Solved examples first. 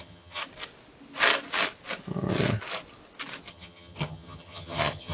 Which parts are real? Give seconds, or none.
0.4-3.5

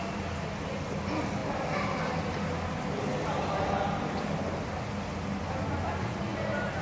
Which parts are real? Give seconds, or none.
0.0-6.8

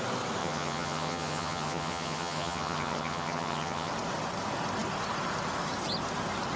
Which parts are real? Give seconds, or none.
0.0-0.4; 3.9-6.6

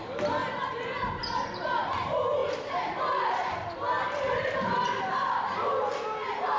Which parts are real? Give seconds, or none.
0.0-6.6

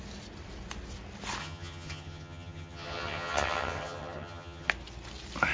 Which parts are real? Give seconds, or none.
0.0-1.4; 4.7-5.5

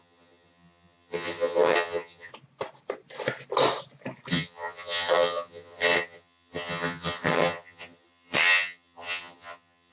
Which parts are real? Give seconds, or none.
2.3-4.3